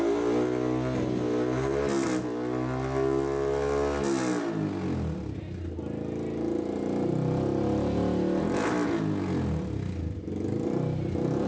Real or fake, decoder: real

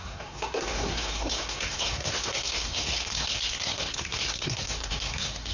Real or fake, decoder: fake, codec, SNAC